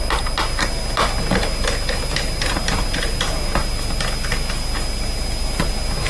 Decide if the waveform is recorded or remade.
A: recorded